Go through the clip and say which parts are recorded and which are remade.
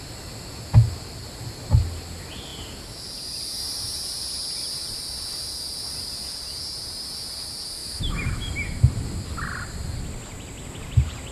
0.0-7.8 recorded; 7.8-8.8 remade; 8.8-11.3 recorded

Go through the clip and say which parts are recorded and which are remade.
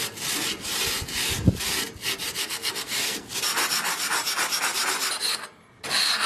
0.0-2.4 recorded; 2.4-3.3 remade; 3.3-6.3 recorded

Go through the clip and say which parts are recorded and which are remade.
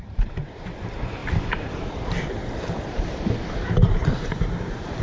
0.0-5.0 remade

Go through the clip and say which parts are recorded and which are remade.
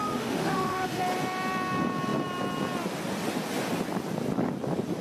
0.0-1.0 remade; 1.0-5.0 recorded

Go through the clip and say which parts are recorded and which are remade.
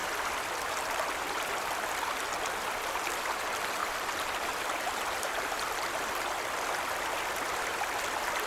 0.0-1.1 remade; 1.1-3.8 recorded; 3.8-5.3 remade; 5.3-8.5 recorded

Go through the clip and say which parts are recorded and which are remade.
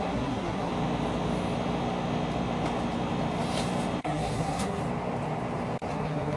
0.0-0.7 remade; 0.7-4.0 recorded; 4.0-4.8 remade; 4.8-5.9 recorded; 5.9-6.4 remade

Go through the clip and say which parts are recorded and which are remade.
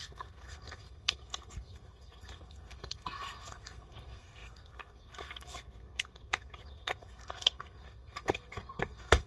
0.0-9.3 remade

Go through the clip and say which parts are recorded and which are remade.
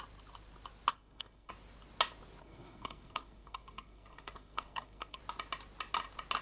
0.0-0.9 recorded; 0.9-1.5 remade; 1.5-2.4 recorded; 2.4-5.2 remade; 5.2-6.4 recorded